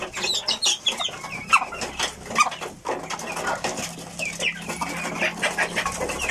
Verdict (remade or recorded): recorded